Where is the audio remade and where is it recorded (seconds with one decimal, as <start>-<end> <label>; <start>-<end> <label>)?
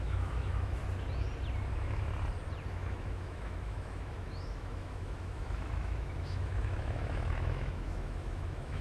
0.0-0.8 remade; 0.8-1.7 recorded; 1.7-2.1 remade; 2.1-2.7 recorded; 2.7-8.8 remade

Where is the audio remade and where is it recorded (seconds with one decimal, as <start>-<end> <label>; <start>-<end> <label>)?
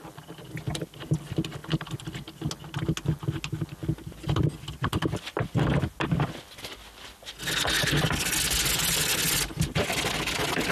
0.0-10.7 recorded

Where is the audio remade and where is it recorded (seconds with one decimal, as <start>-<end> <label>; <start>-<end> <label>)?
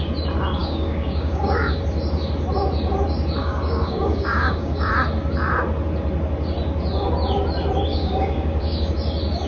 0.0-0.6 recorded; 0.6-1.8 remade; 1.8-3.4 recorded; 3.4-4.9 remade; 4.9-7.9 recorded; 7.9-8.9 remade; 8.9-9.5 recorded